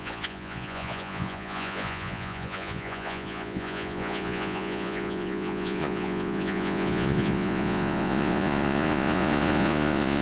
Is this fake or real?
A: fake